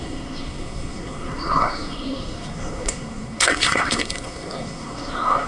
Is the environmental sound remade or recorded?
remade